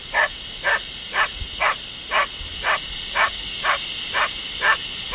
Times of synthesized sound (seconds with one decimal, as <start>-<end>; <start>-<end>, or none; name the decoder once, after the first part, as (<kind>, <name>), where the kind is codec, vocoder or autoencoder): none